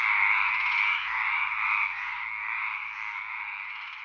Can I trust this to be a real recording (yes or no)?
yes